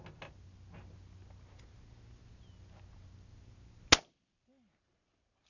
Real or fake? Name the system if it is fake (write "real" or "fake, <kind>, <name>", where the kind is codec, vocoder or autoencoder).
real